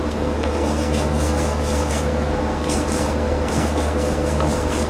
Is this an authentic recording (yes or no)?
no